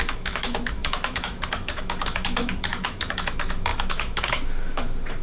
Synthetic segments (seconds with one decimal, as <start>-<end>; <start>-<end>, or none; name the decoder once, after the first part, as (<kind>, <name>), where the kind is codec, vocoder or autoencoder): 0.0-5.2 (autoencoder, DAC-VAE)